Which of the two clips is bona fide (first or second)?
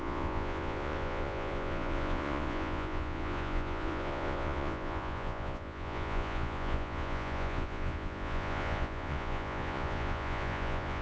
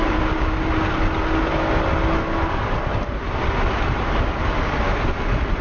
second